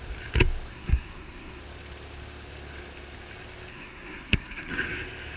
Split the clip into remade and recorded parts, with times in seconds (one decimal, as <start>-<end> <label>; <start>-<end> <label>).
0.0-0.7 recorded; 0.7-1.6 remade; 1.6-3.7 recorded; 3.7-4.7 remade; 4.7-5.4 recorded